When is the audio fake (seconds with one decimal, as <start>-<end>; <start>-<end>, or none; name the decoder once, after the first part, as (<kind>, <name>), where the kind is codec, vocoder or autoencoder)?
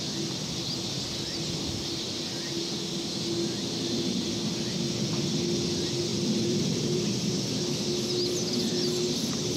6.1-7.3 (vocoder, BigVGAN v2)